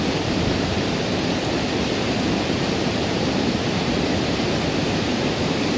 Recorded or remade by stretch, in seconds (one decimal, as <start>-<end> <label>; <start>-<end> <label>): 0.0-2.8 recorded; 2.8-3.6 remade; 3.6-5.8 recorded